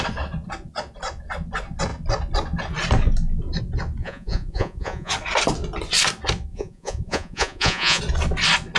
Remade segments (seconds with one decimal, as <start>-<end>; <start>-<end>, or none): 4.0-5.1; 6.5-8.0